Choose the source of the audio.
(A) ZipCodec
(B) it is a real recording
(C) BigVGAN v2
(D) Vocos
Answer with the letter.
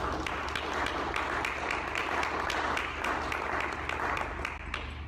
B